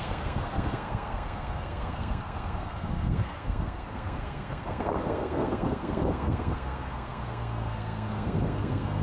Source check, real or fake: fake